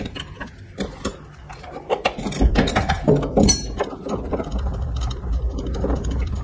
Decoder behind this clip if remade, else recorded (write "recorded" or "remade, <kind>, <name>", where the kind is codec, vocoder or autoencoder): remade, vocoder, BigVGAN v2